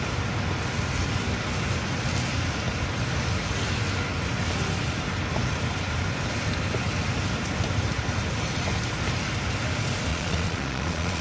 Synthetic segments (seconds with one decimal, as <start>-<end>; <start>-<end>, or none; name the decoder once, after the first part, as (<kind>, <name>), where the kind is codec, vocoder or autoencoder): 10.1-11.2 (vocoder, Vocos)